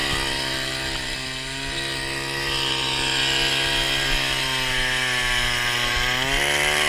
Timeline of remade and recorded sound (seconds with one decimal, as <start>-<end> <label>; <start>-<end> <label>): 0.0-6.9 recorded